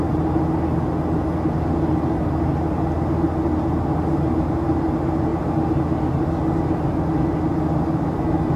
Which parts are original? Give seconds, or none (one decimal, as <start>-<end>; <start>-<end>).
0.0-8.6